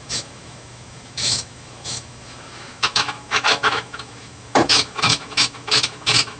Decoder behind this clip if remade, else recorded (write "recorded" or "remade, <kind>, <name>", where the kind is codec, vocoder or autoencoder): remade, autoencoder, DAC-VAE